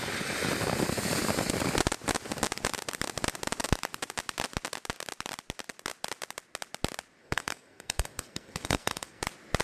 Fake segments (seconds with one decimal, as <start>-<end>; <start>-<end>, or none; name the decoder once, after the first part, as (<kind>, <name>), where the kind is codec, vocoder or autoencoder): 7.2-9.2 (codec, SNAC)